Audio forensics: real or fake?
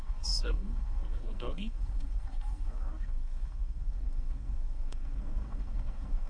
fake